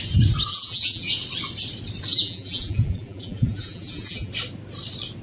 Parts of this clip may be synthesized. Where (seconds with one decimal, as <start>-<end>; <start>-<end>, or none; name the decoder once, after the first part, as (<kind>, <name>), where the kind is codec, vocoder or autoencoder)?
0.5-1.1 (vocoder, BigVGAN v2); 2.1-4.3